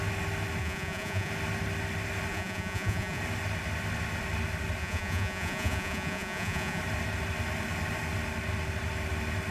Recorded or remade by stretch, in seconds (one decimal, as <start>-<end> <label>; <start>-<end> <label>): 0.0-0.6 recorded; 0.6-1.3 remade; 1.3-2.3 recorded; 2.3-3.2 remade; 3.2-4.8 recorded; 4.8-6.8 remade; 6.8-9.5 recorded